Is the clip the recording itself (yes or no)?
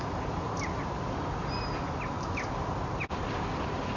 yes